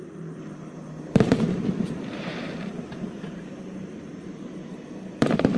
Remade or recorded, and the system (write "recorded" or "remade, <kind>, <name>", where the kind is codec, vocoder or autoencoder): remade, vocoder, BigVGAN v2